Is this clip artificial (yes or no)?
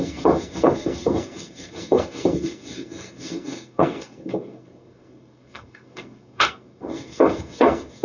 yes